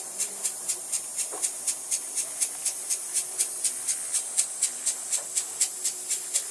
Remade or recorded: recorded